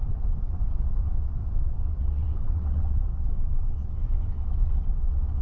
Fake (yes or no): yes